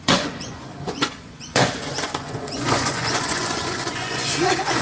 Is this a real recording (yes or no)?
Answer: no